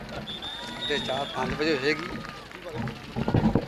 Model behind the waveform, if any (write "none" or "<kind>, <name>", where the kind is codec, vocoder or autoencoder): none